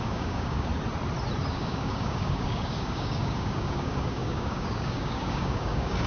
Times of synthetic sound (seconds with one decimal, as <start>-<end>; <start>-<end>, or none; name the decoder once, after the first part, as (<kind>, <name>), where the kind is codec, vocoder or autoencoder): 0.0-0.7 (codec, DAC); 1.5-6.1